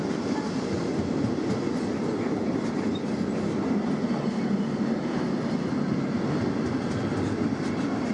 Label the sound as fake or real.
real